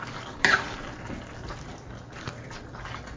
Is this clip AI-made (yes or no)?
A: no